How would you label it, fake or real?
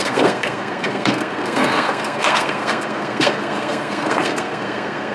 fake